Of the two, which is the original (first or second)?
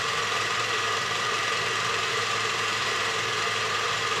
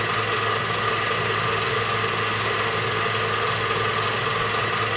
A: second